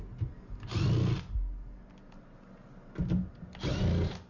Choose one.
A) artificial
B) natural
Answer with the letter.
B